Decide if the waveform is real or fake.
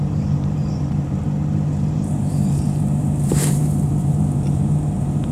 fake